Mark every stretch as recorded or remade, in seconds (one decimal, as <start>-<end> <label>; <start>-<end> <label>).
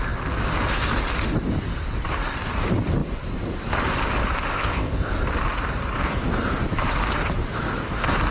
0.0-4.5 recorded; 4.5-5.1 remade; 5.1-8.3 recorded